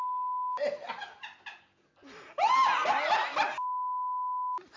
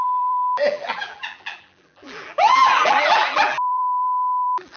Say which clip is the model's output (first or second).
second